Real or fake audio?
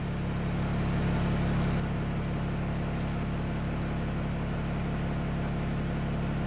real